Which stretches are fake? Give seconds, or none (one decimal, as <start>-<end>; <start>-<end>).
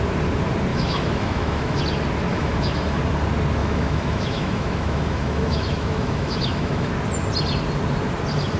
0.7-1.8; 2.3-3.0; 3.6-6.9